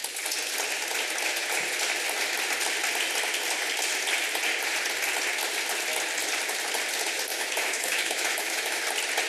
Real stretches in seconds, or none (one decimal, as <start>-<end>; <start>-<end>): 0.0-7.3; 8.8-9.3